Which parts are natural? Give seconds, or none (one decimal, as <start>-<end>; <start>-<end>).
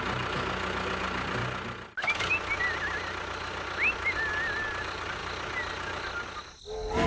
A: 0.0-7.1